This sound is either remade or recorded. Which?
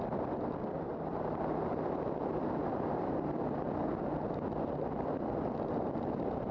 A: remade